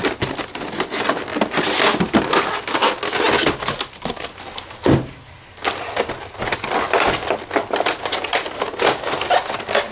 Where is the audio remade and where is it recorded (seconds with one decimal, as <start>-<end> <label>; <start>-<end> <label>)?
0.0-9.9 recorded